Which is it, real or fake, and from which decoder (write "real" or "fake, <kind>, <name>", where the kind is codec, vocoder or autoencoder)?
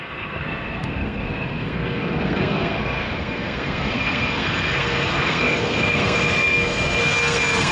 fake, codec, SNAC